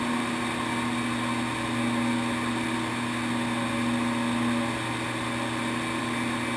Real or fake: real